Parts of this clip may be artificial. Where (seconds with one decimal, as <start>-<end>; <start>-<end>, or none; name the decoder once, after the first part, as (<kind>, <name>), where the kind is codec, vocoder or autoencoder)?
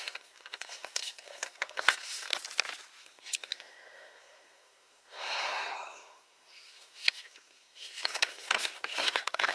0.0-2.3 (codec, SNAC); 3.0-9.5